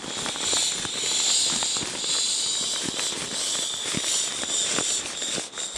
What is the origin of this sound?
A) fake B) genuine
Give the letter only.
B